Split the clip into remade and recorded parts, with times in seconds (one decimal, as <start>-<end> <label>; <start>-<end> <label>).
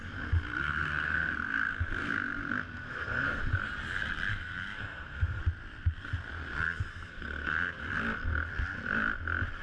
0.0-0.6 recorded; 0.6-3.4 remade; 3.4-4.3 recorded; 4.3-5.4 remade; 5.4-6.9 recorded; 6.9-7.8 remade; 7.8-9.6 recorded